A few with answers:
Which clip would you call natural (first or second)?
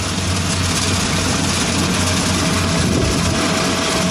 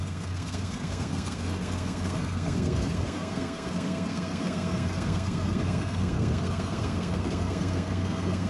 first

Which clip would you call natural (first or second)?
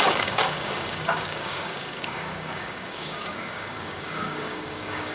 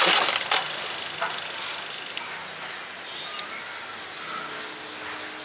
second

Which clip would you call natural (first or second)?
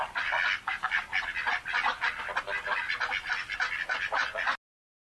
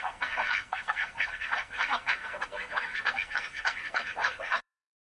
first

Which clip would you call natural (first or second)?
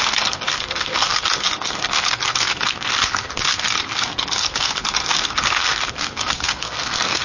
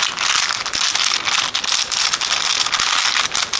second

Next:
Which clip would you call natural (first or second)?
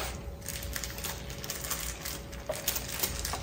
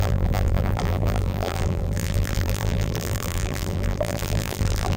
first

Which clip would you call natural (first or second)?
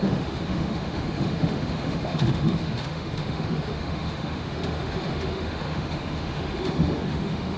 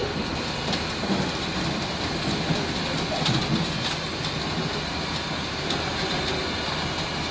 second